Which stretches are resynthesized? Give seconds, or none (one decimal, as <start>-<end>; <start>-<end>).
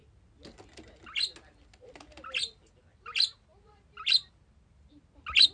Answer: none